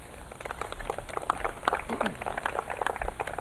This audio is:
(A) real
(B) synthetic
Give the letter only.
A